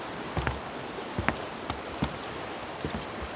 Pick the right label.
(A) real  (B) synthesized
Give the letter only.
A